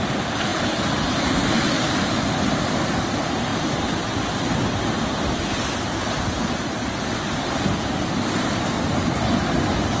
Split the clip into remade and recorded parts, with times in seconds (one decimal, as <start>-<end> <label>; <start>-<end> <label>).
0.0-10.0 recorded